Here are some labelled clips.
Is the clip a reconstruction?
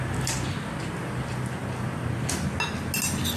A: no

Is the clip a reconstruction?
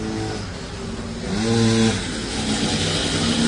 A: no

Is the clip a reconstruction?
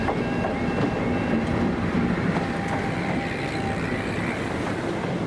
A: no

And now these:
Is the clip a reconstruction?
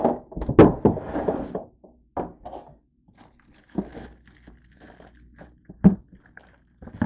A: no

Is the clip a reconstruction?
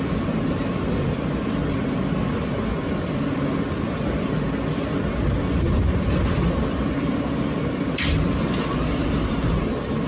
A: no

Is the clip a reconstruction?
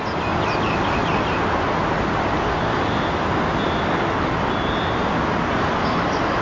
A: no